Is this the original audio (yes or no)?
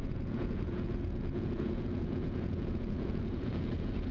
no